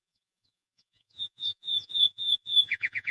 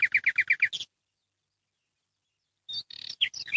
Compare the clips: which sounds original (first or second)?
second